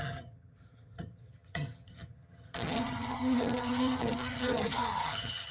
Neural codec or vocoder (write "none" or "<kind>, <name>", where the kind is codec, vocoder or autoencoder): vocoder, HiFi-GAN